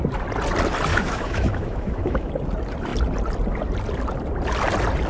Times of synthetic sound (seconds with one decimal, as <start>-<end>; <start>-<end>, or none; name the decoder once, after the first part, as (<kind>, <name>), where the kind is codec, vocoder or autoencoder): 0.9-2.3 (autoencoder, DAC-VAE)